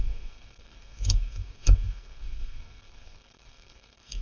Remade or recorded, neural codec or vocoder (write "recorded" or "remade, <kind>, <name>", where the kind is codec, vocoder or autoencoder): remade, codec, SNAC